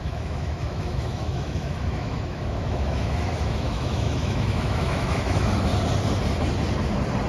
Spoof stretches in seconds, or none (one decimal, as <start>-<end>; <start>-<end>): 0.0-5.7